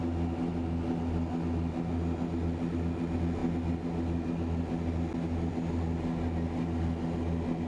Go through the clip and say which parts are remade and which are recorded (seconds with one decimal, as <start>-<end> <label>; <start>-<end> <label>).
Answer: 0.0-7.7 recorded